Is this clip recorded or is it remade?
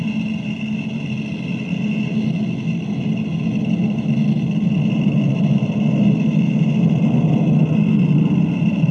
recorded